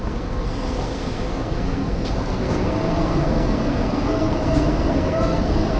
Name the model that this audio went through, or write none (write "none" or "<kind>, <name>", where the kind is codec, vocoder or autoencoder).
codec, SNAC